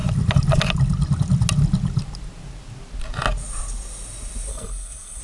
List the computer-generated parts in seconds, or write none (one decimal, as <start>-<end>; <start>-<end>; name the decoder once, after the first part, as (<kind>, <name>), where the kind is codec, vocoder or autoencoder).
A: 4.5-5.2 (codec, SNAC)